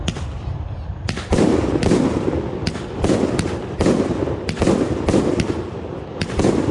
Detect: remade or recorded recorded